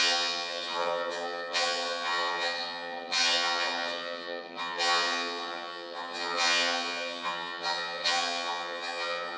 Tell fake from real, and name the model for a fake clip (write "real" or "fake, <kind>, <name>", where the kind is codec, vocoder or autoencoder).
fake, vocoder, HiFi-GAN